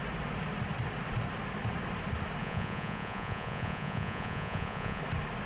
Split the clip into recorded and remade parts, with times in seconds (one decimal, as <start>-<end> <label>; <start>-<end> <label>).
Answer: 0.0-2.4 recorded; 2.4-5.0 remade; 5.0-5.5 recorded